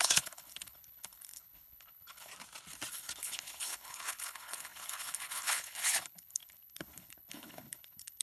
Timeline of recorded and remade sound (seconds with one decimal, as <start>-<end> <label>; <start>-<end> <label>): 0.0-2.3 remade; 2.3-2.9 recorded; 2.9-8.2 remade